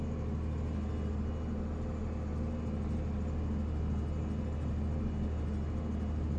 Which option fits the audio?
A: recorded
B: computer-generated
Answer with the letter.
A